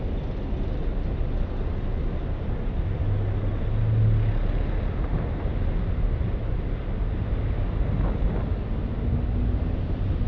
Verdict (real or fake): real